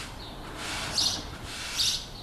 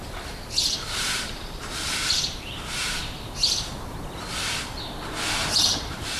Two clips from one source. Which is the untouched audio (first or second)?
first